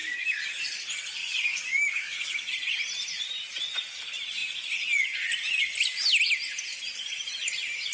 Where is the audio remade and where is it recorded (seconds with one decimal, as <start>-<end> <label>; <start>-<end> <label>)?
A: 0.0-0.6 remade; 0.6-1.2 recorded; 1.2-2.5 remade; 2.5-7.9 recorded